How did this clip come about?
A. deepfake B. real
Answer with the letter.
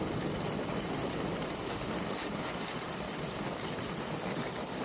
A